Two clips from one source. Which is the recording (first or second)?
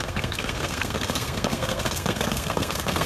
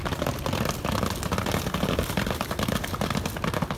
second